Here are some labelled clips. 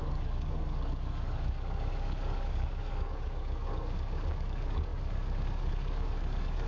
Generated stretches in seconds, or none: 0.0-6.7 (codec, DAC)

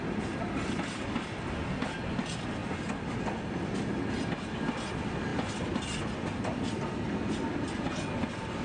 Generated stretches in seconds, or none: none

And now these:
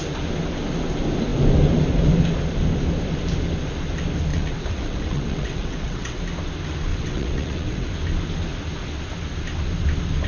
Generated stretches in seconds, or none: 4.3-6.2 (vocoder, WaveNeXt); 6.9-7.9

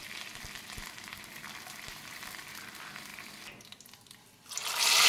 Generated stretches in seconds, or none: none

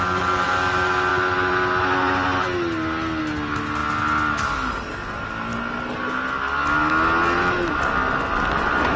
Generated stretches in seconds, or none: none